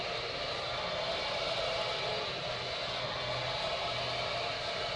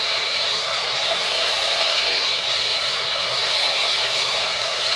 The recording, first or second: first